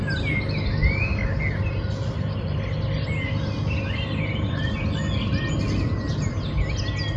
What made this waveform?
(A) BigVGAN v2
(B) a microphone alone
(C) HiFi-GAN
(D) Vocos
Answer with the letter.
B